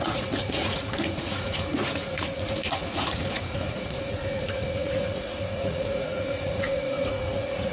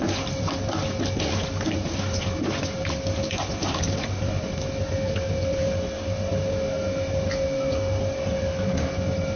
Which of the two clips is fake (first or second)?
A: first